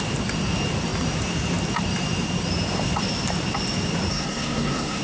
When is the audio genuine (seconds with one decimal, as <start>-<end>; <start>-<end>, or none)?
0.0-4.1